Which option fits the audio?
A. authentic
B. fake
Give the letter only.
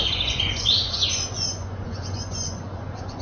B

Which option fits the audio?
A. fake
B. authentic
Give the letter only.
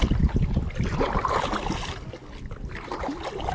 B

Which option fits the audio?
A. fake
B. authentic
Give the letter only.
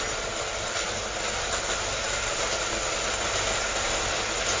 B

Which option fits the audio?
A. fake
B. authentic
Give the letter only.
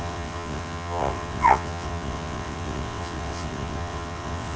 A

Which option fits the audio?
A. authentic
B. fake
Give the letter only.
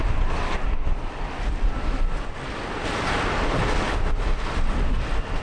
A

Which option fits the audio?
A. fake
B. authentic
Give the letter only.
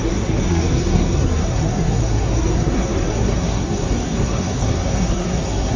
A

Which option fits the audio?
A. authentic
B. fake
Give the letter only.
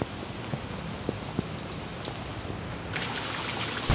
A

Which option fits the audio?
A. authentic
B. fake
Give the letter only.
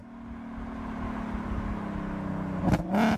A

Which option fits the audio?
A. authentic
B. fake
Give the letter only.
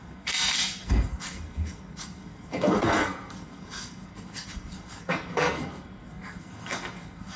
B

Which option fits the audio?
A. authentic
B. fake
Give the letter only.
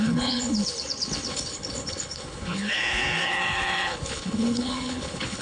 B